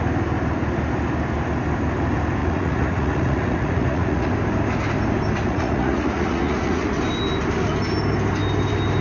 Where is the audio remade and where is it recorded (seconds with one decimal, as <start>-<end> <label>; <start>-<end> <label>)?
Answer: 0.0-2.4 recorded; 2.4-4.3 remade; 4.3-5.4 recorded; 5.4-6.9 remade; 6.9-9.0 recorded